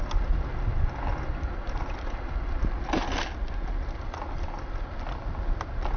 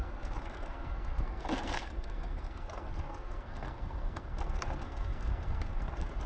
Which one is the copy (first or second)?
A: second